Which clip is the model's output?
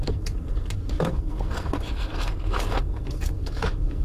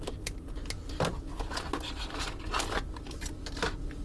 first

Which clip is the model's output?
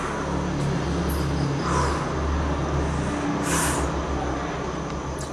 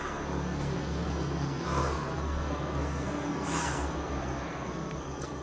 second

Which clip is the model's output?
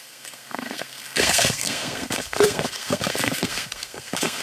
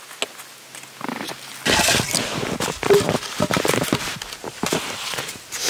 first